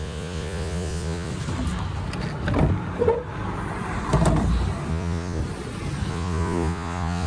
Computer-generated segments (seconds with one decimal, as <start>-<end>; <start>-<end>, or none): 0.0-1.3; 4.9-5.4; 6.1-7.3